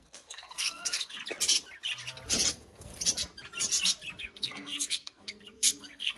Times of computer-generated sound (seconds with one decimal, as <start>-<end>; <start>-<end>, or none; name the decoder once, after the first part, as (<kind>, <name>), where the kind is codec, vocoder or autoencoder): 0.0-1.2 (codec, SNAC); 2.5-2.9; 4.2-6.2